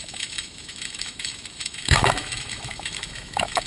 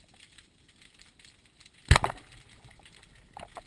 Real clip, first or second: second